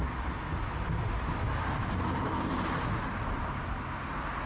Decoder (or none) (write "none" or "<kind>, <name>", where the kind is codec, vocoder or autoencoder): none